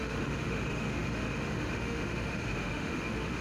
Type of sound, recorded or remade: remade